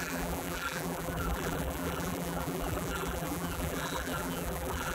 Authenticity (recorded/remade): remade